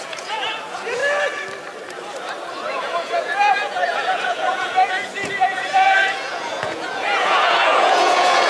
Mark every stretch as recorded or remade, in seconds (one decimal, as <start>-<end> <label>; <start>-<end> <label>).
0.0-1.0 remade; 1.0-2.7 recorded; 2.7-8.5 remade